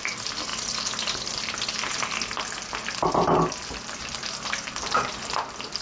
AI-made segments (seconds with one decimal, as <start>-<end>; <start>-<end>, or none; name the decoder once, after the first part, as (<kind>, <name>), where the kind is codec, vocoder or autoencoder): none